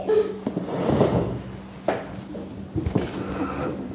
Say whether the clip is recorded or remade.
recorded